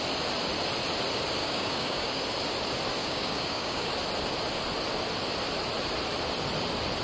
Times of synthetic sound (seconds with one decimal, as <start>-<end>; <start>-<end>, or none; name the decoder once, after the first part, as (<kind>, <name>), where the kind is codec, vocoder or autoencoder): 1.4-2.2 (codec, DAC); 3.0-3.9